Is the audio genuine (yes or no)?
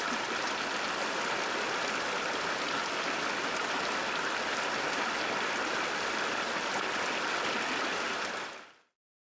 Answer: yes